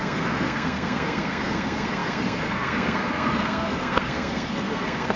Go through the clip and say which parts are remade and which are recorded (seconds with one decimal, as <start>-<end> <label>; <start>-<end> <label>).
0.0-5.2 remade